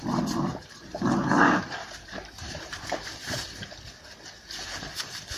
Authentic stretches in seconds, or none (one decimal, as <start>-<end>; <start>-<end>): 0.0-0.5; 3.7-5.4